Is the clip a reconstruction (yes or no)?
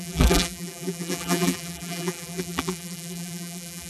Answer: yes